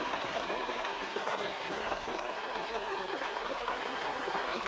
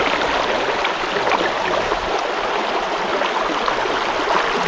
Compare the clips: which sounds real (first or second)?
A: second